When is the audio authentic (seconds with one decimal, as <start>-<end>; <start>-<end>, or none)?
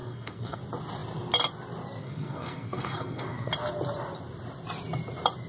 0.6-2.0; 3.5-5.5